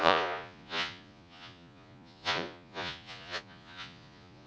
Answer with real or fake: fake